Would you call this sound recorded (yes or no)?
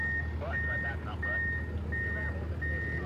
yes